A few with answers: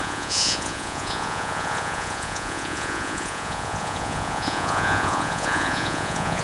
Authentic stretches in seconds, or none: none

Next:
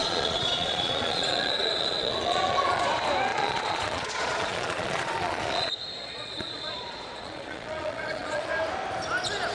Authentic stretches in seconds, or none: 2.8-3.3; 8.5-9.5

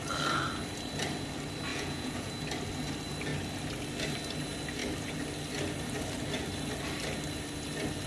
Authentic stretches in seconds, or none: 0.0-1.7; 2.3-8.1

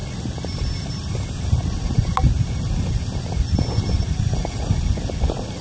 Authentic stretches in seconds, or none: 0.0-5.6

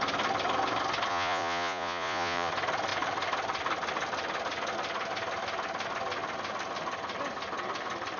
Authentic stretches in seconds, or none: 0.0-1.1; 2.5-8.2